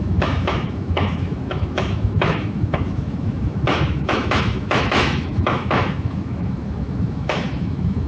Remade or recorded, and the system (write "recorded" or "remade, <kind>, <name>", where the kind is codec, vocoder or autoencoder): remade, autoencoder, DAC-VAE